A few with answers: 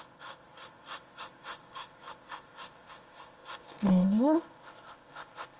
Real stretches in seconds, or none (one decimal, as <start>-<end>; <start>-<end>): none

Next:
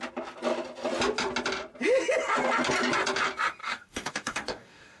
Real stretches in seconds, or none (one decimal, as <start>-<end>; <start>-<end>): 0.0-3.6

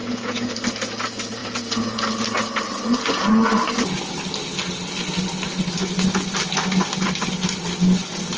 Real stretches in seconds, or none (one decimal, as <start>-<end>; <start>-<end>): 0.5-1.4; 2.0-8.4

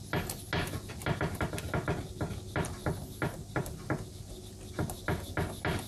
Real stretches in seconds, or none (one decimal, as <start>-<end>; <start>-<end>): 0.0-5.9

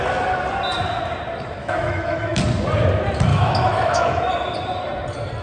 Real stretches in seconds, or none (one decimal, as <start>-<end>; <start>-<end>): 0.0-1.6; 2.4-3.3; 4.3-5.4

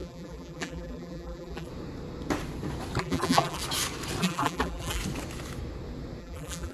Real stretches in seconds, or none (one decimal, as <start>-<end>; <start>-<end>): 1.7-3.0; 3.6-4.2; 5.0-6.2

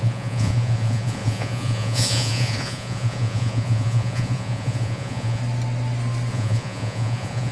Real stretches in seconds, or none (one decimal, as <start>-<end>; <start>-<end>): 5.4-6.3